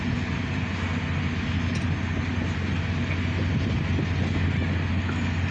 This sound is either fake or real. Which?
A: real